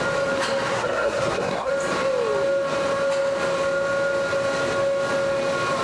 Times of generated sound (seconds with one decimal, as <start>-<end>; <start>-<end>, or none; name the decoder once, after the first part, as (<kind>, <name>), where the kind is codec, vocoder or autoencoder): 0.7-1.7 (codec, SNAC)